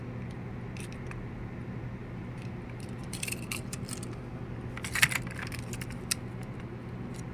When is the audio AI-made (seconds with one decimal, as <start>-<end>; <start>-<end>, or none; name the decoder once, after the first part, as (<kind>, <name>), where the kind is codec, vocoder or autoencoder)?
2.0-4.2 (vocoder, BigVGAN v2)

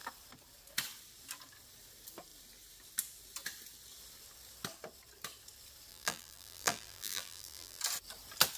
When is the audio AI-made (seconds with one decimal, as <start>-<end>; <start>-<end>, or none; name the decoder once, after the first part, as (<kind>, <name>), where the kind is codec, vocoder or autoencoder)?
5.9-7.8 (vocoder, BigVGAN v2)